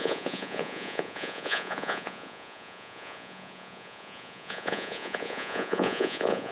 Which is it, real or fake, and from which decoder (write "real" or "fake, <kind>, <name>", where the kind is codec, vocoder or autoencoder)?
fake, vocoder, Vocos